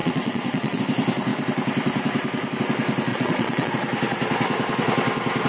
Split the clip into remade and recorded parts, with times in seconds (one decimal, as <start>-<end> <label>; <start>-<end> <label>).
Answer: 0.0-0.8 remade; 0.8-3.1 recorded; 3.1-3.7 remade; 3.7-5.5 recorded